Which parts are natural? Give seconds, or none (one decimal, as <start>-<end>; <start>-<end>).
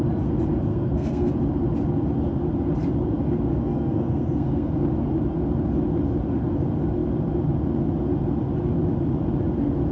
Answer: 0.0-0.7; 1.3-3.5; 4.7-9.9